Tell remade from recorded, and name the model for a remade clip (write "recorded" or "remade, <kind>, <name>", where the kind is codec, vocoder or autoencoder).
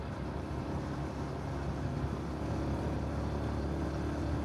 recorded